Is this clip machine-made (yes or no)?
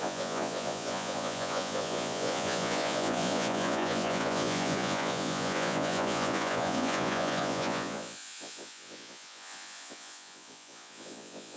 yes